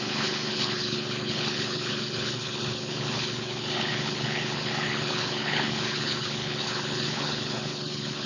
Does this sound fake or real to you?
fake